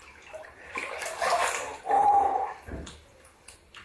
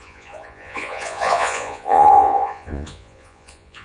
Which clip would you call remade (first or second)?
second